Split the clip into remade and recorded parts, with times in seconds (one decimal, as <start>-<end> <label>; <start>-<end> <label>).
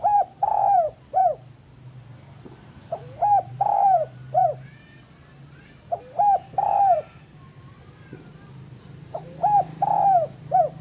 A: 0.0-1.2 remade; 1.2-2.6 recorded; 2.6-10.8 remade